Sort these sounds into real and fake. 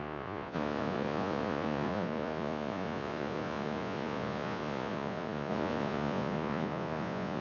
fake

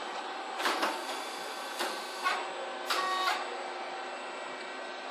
real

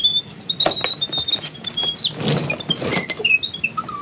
real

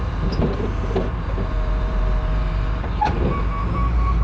fake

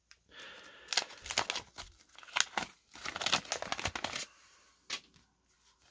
real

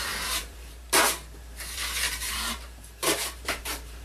fake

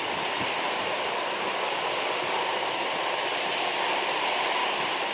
real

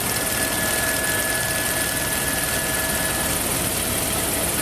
real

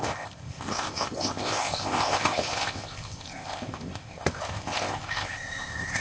fake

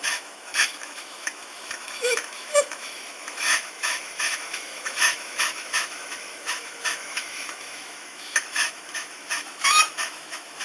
fake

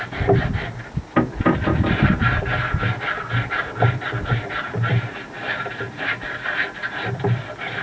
real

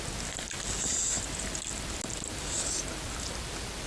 real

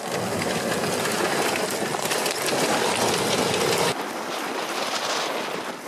real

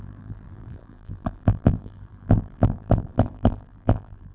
fake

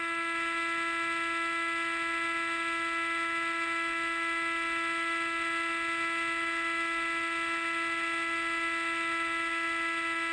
real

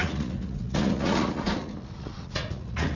fake